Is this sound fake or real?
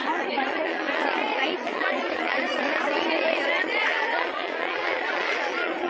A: fake